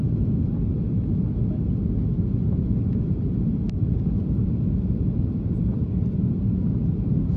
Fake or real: real